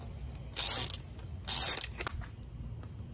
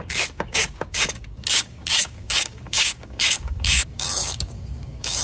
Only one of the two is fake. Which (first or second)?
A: second